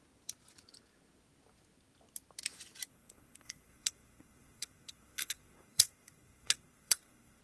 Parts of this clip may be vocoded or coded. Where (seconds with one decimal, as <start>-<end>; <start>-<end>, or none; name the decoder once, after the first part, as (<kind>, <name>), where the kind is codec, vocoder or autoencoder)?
2.9-7.4 (codec, SNAC)